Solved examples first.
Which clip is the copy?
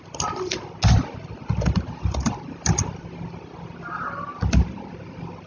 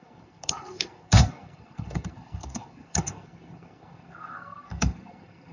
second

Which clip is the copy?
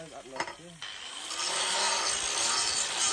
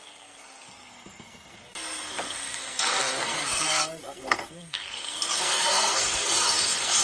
second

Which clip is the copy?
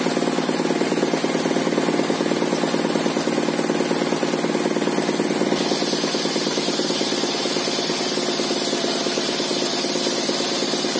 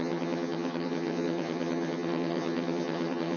second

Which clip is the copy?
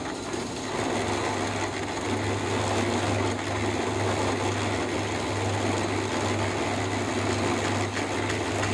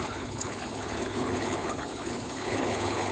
second